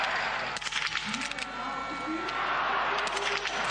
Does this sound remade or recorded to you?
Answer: recorded